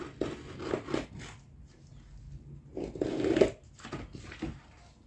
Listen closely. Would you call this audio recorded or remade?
recorded